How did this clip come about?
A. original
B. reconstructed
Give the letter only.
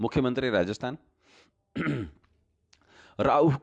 A